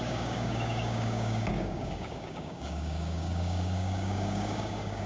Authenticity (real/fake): fake